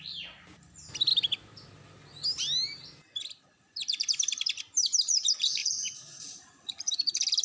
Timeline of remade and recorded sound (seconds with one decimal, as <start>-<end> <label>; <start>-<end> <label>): 0.0-5.6 recorded; 5.6-6.9 remade; 6.9-7.4 recorded